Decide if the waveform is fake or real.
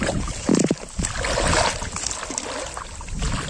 real